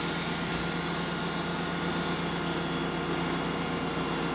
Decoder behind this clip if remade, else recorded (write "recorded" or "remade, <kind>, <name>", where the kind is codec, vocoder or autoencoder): recorded